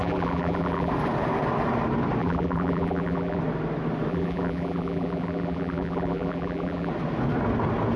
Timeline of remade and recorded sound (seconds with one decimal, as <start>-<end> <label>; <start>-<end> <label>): 0.0-0.9 remade; 0.9-2.2 recorded; 2.2-3.4 remade; 3.4-4.1 recorded; 4.1-6.9 remade; 6.9-8.0 recorded